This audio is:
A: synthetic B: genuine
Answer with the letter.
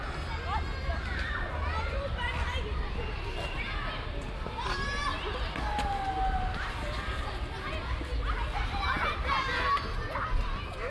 B